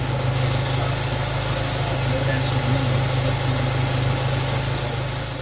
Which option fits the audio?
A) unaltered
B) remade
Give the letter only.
A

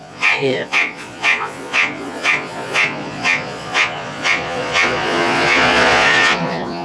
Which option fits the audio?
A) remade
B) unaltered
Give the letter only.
A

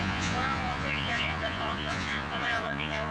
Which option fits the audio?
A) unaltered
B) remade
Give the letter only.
B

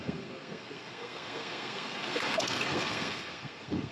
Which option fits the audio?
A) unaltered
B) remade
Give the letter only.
B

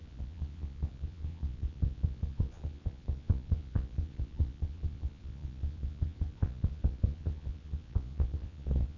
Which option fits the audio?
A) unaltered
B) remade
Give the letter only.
B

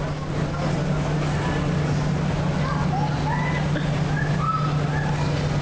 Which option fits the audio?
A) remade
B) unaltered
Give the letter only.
B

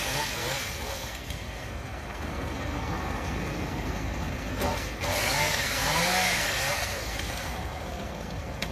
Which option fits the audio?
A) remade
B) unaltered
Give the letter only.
A